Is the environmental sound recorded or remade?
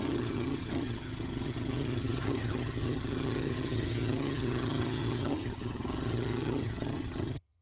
remade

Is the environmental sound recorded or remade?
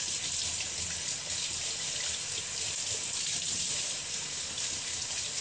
recorded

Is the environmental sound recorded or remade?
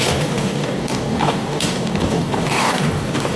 remade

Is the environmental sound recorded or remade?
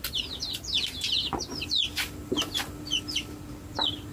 recorded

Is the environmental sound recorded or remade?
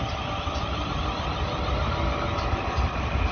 recorded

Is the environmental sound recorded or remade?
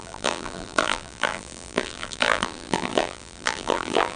remade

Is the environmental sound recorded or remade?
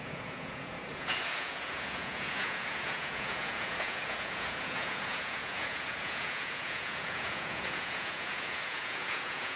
remade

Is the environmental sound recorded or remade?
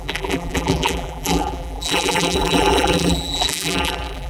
remade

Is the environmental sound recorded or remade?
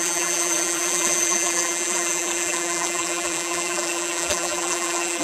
remade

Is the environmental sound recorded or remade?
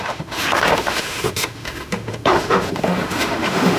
remade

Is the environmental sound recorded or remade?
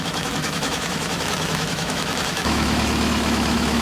remade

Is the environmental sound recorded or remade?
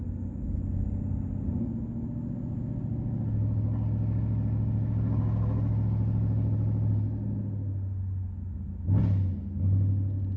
recorded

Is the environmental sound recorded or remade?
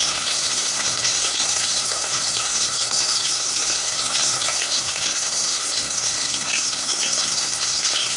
remade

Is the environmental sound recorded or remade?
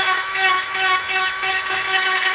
remade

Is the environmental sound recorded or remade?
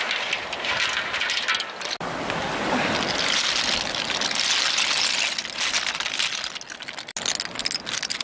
recorded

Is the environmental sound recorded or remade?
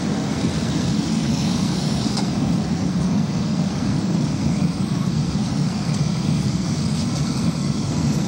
remade